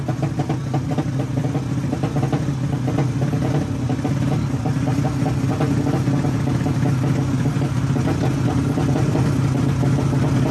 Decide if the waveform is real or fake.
real